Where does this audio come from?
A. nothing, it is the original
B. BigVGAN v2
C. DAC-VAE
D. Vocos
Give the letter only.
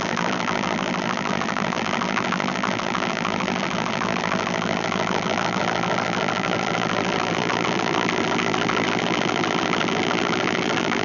B